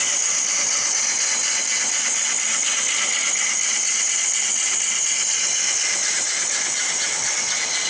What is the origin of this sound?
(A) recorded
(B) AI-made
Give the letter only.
A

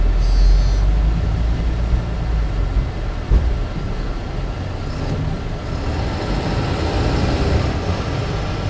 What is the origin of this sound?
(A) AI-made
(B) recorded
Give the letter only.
B